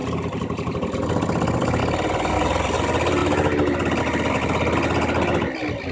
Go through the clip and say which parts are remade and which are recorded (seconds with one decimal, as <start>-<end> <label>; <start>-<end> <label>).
0.0-5.9 recorded